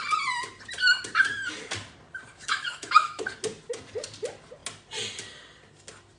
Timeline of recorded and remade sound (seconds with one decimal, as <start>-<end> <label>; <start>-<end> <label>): 0.0-2.3 recorded; 2.3-3.2 remade; 3.2-6.2 recorded